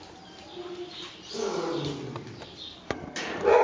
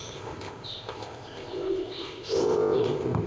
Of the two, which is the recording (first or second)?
first